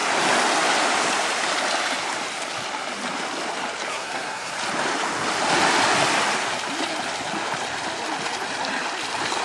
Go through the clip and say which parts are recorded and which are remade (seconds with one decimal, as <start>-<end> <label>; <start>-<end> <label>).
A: 0.0-3.9 recorded; 3.9-4.5 remade; 4.5-9.4 recorded